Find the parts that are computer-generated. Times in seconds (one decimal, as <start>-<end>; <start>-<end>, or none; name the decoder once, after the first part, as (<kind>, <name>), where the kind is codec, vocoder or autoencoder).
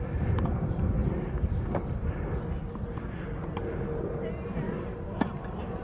0.0-1.0 (vocoder, BigVGAN v2); 4.0-5.8